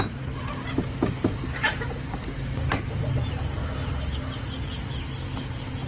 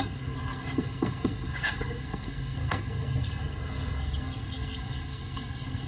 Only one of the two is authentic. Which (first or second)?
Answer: first